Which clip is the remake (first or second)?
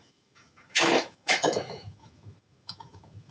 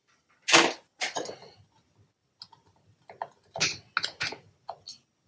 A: first